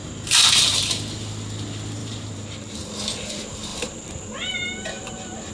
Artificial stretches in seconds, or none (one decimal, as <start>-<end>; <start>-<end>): 0.0-1.0; 2.0-2.7; 3.7-5.5